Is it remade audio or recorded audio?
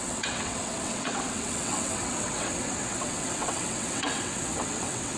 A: remade